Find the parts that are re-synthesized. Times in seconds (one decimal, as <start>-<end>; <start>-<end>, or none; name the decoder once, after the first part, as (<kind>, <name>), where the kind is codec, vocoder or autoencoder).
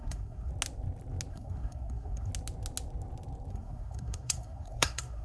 0.0-0.5 (codec, SNAC); 1.3-2.3; 3.5-5.2